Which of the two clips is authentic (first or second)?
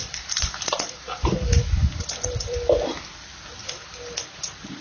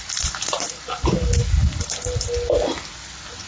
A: second